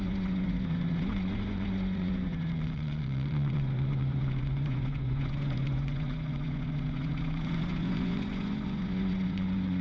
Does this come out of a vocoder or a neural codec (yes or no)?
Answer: yes